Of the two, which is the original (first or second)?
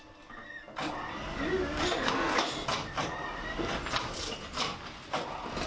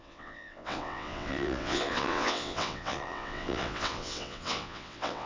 first